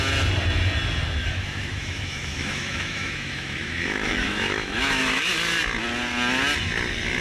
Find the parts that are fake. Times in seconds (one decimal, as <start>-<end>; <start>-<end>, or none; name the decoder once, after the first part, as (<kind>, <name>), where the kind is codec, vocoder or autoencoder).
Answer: 1.2-5.3 (autoencoder, DAC-VAE)